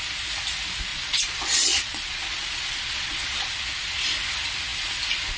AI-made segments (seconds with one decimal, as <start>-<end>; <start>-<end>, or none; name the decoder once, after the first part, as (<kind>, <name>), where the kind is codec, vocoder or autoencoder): 0.9-3.5 (vocoder, Vocos)